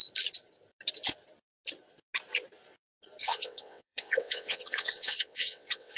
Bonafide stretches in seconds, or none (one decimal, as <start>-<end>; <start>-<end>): 0.0-3.2